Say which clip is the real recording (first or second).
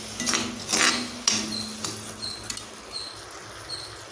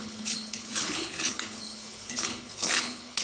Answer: first